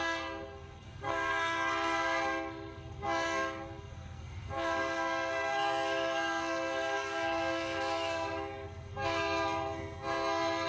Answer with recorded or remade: remade